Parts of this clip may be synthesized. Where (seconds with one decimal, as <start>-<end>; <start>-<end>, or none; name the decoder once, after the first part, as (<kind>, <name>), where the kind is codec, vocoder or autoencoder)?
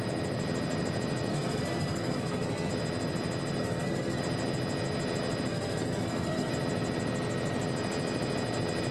1.3-2.7 (codec, SNAC); 3.6-4.2; 5.5-6.5